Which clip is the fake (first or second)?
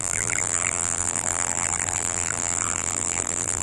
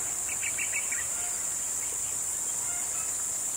first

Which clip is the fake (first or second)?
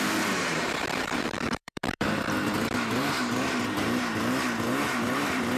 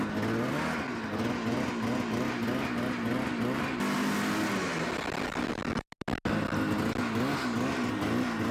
first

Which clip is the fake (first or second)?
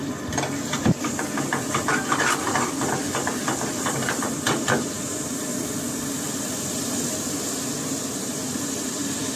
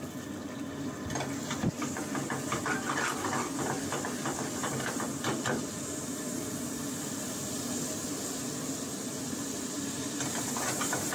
first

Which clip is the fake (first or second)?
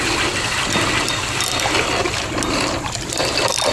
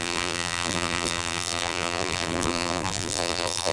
second